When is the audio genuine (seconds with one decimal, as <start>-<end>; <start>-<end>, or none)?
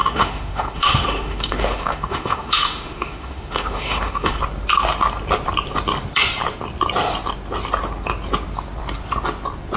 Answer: 4.4-9.8